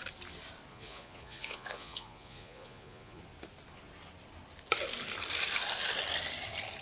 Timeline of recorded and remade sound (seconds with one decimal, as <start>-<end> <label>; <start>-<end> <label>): 0.0-0.7 recorded; 0.7-3.2 remade; 3.2-6.8 recorded